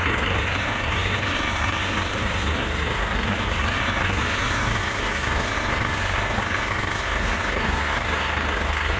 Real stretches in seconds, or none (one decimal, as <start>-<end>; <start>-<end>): none